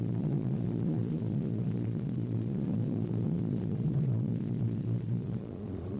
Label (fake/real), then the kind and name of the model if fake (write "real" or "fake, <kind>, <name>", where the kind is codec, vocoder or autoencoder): fake, vocoder, Vocos